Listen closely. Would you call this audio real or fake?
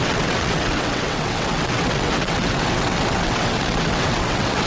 fake